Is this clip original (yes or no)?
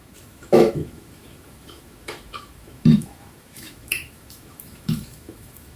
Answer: no